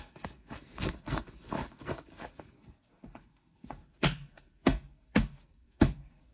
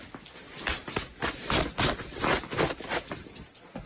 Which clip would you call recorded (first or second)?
second